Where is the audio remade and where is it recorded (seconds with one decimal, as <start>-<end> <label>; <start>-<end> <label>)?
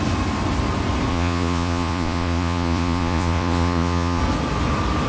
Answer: 0.0-1.1 recorded; 1.1-4.2 remade; 4.2-5.1 recorded